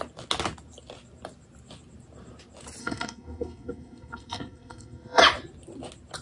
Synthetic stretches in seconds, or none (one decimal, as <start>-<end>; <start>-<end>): 2.8-5.2